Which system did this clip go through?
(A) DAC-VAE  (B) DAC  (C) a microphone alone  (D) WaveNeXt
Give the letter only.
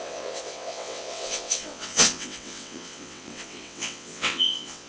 D